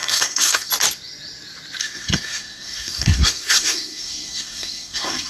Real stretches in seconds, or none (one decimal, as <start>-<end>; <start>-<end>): 0.7-1.8